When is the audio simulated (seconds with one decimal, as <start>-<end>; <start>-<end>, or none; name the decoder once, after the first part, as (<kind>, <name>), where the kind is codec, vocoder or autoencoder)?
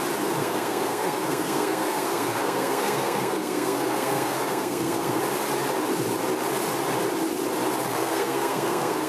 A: 0.4-5.2 (codec, SNAC); 7.9-9.1